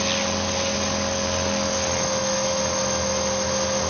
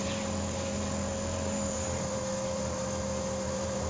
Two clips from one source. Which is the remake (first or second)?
second